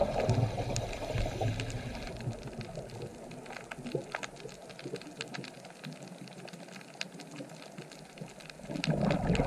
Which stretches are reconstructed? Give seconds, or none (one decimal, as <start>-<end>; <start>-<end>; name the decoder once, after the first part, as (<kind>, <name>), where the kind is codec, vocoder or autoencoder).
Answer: none